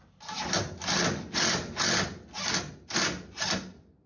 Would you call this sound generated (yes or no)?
no